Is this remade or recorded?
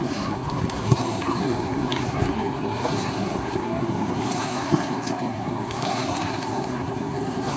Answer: remade